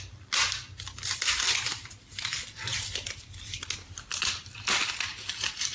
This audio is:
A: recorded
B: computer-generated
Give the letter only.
A